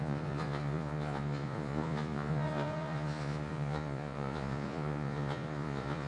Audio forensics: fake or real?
fake